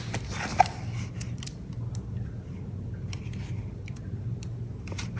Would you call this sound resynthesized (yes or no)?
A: no